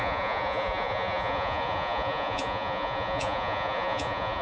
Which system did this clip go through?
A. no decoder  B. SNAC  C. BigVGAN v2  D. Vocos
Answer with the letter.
D